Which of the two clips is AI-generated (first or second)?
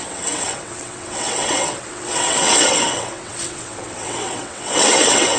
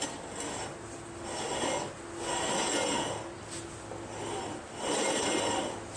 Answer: first